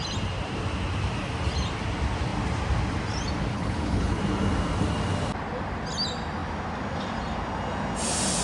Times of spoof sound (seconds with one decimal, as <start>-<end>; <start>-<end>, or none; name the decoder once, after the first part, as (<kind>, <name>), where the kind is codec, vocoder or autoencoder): 3.5-4.2 (codec, HILCodec)